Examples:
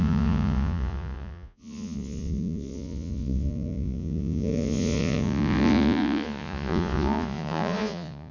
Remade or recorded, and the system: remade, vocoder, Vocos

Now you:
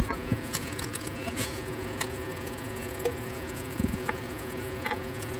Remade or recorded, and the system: remade, vocoder, Vocos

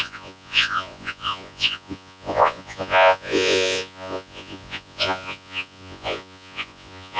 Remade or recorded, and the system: remade, vocoder, Vocos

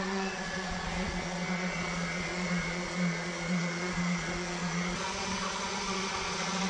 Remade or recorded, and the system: remade, vocoder, Vocos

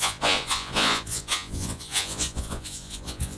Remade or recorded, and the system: remade, vocoder, Vocos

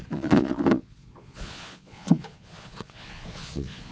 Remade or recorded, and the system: remade, vocoder, Vocos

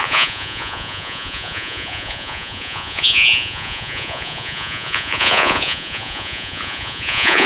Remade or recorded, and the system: remade, vocoder, Vocos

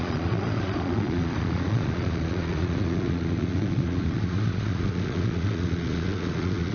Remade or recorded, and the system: remade, vocoder, Vocos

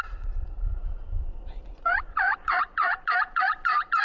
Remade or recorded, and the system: remade, vocoder, Vocos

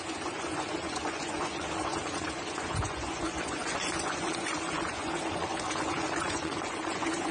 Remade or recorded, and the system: remade, vocoder, Vocos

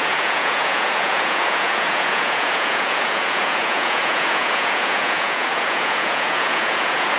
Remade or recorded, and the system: remade, vocoder, Vocos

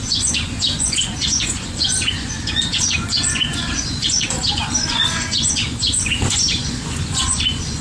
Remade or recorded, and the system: remade, vocoder, Vocos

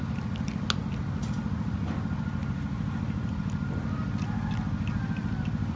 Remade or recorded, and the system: recorded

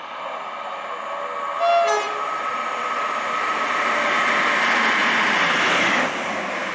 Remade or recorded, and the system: recorded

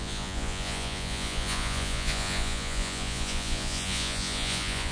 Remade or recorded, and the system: remade, vocoder, Vocos